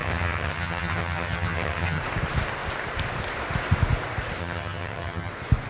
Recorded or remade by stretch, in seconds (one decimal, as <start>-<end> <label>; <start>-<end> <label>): 0.0-2.0 remade; 2.0-4.4 recorded; 4.4-5.3 remade; 5.3-5.7 recorded